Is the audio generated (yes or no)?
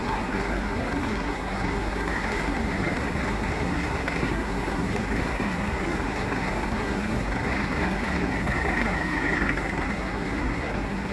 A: yes